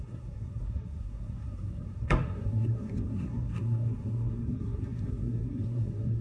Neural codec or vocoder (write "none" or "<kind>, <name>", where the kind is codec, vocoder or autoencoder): codec, SNAC